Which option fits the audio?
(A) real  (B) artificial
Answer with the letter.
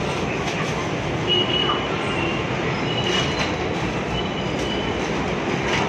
A